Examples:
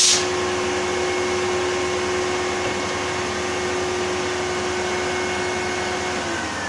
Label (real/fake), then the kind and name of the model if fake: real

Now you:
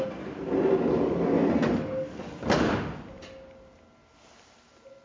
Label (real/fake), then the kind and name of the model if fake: real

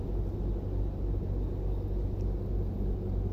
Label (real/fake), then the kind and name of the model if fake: real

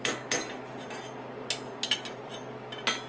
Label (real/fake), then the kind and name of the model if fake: real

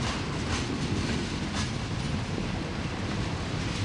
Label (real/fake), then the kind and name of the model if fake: real